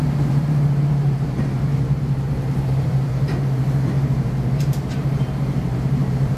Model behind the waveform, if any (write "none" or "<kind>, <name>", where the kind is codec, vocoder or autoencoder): vocoder, BigVGAN v2